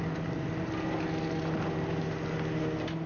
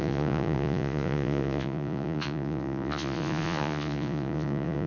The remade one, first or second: second